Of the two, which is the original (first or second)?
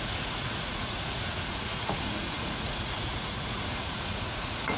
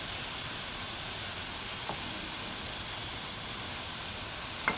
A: second